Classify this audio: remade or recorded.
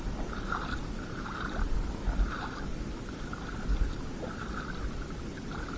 recorded